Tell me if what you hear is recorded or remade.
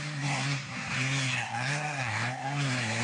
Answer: remade